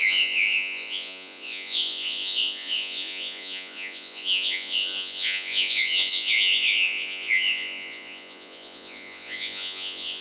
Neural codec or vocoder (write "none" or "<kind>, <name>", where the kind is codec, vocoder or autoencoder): vocoder, Vocos